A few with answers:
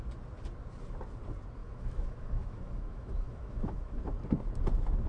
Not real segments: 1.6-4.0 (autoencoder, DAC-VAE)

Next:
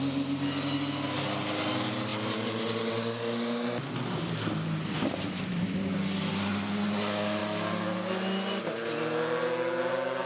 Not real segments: none

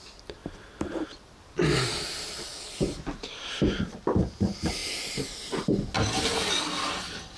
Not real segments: none

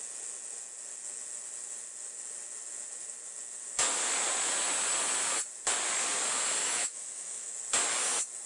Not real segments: 6.6-7.5 (autoencoder, DAC-VAE)

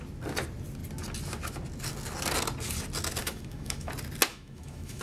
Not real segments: 3.2-3.9 (autoencoder, DAC-VAE); 4.3-5.0

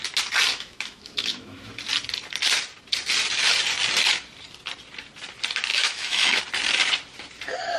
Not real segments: 0.5-1.7 (autoencoder, DAC-VAE); 5.7-6.4

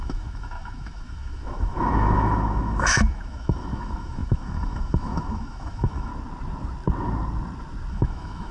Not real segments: 0.0-6.1 (autoencoder, DAC-VAE); 7.9-8.5

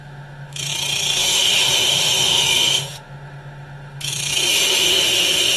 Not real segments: 0.0-5.6 (autoencoder, DAC-VAE)